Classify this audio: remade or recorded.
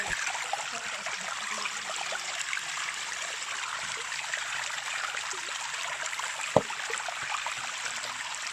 remade